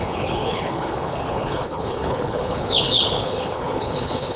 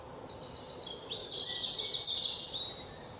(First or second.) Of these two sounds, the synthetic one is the first